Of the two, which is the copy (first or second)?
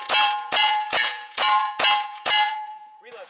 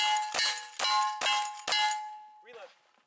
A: first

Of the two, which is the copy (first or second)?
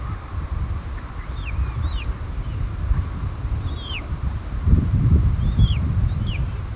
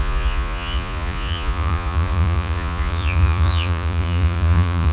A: second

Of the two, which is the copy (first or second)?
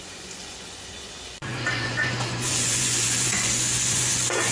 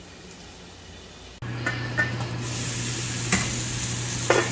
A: first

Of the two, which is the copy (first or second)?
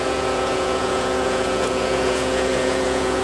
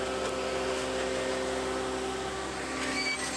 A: first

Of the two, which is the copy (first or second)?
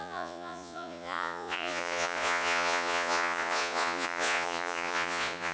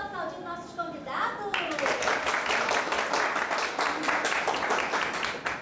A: first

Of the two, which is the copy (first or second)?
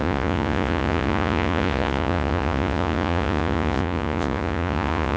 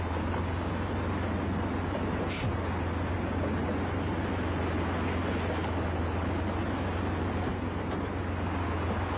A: first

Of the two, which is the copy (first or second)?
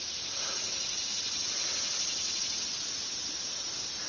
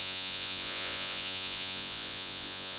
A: second